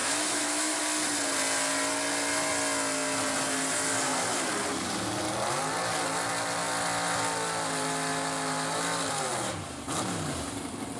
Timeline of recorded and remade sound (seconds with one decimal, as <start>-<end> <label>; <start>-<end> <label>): 0.0-0.8 remade; 0.8-11.0 recorded